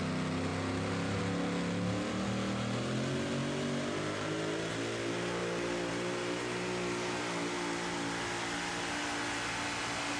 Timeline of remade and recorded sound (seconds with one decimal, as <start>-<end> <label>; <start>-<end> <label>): 0.0-10.2 recorded